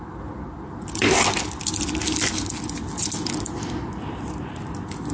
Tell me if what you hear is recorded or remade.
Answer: recorded